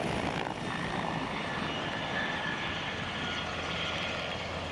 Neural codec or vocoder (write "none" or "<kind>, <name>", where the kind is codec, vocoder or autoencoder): none